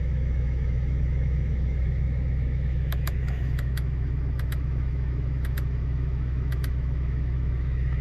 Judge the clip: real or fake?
fake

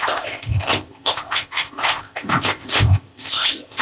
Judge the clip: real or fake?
fake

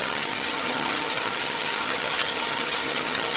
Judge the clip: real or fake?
fake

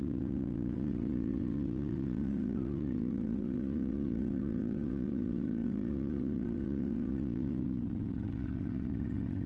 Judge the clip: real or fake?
fake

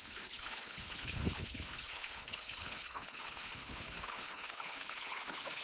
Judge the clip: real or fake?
fake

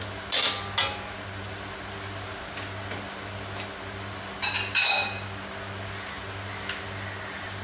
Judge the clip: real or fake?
real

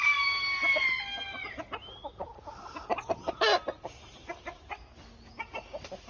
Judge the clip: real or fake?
real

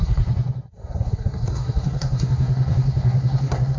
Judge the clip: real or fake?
fake